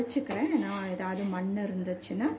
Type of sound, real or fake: real